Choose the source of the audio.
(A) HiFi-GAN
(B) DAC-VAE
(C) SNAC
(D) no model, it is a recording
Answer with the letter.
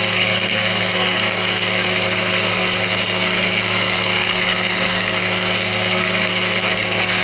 C